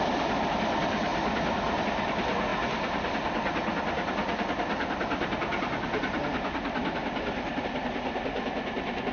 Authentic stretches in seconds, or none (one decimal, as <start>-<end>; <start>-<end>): 0.0-1.1; 1.8-9.1